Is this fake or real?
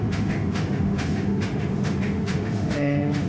fake